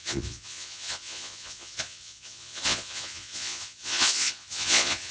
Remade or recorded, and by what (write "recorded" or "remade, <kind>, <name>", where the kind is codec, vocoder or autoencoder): remade, vocoder, Vocos